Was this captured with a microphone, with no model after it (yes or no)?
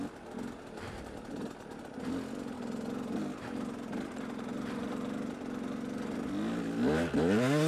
yes